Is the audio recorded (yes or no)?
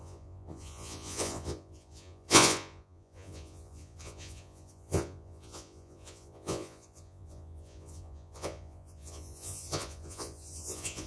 no